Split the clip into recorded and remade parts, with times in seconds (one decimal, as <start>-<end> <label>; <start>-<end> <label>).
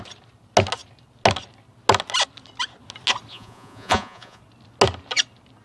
0.0-3.3 recorded; 3.3-4.4 remade; 4.4-5.6 recorded